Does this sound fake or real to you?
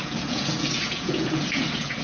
fake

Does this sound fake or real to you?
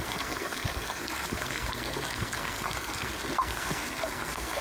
fake